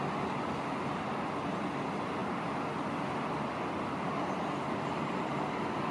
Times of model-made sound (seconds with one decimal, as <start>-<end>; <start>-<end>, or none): 2.2-3.3